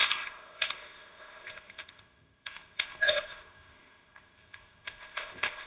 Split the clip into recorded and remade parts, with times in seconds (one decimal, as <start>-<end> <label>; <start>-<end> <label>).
0.0-5.7 remade